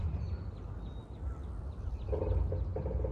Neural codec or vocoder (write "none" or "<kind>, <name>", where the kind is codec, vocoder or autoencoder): none